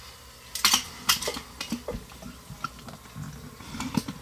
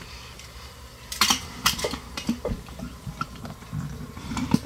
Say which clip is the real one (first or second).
first